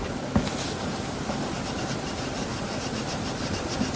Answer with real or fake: real